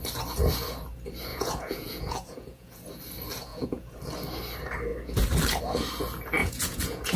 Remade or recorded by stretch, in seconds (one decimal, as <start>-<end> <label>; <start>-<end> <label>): 0.0-1.3 recorded; 1.3-3.0 remade; 3.0-3.5 recorded; 3.5-4.0 remade; 4.0-6.4 recorded; 6.4-7.2 remade

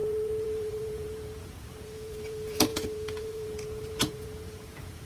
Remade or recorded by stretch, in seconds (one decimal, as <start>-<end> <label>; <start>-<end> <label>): 0.0-5.1 remade

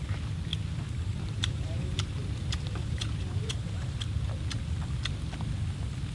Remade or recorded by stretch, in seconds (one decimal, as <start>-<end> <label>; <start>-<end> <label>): 0.0-0.5 recorded; 0.5-4.1 remade; 4.1-6.1 recorded

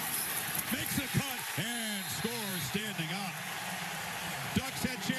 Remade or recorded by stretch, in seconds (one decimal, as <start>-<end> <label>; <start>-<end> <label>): 0.0-2.5 recorded; 2.5-3.3 remade; 3.3-4.2 recorded; 4.2-4.8 remade; 4.8-5.2 recorded